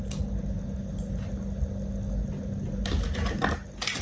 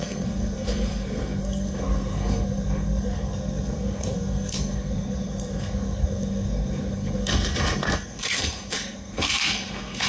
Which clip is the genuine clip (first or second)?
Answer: first